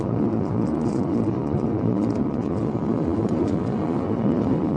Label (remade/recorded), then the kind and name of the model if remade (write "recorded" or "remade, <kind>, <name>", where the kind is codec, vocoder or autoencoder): remade, vocoder, Vocos